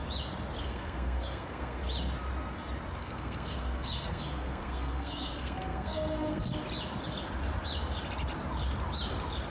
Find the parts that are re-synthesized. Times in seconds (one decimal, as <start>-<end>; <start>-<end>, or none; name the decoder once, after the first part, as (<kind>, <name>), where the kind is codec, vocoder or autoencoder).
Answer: 0.6-1.8 (codec, SNAC); 3.0-6.5